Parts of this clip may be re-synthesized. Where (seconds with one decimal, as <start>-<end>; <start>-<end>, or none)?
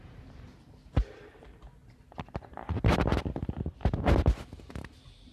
0.0-0.8; 1.4-1.8; 4.7-5.3